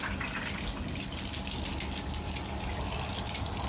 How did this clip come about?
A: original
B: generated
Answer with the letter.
A